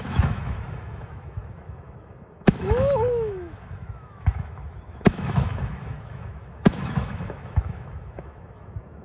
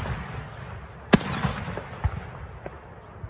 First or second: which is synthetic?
first